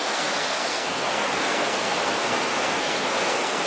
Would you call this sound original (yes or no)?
no